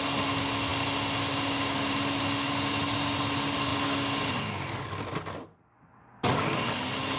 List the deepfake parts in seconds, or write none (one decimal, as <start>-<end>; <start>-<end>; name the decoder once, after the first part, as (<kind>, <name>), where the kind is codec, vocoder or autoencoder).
none